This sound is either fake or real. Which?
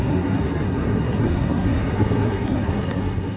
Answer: fake